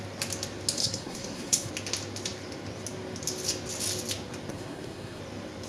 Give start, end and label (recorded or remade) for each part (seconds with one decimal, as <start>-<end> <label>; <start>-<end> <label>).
0.0-0.8 recorded; 0.8-1.7 remade; 1.7-4.5 recorded; 4.5-5.2 remade; 5.2-5.7 recorded